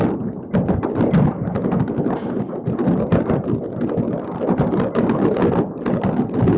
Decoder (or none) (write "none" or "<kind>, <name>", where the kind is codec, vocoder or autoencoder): none